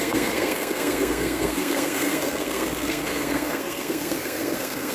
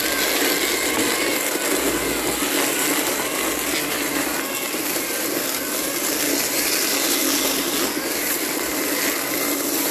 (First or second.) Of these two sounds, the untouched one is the second